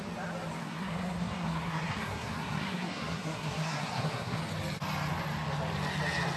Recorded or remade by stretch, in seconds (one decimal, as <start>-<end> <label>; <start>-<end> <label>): 0.0-0.6 recorded; 0.6-4.4 remade; 4.4-6.4 recorded